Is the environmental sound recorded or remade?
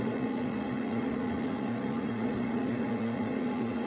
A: remade